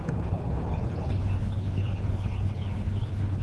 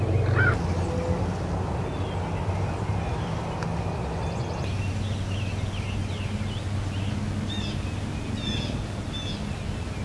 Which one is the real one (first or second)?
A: second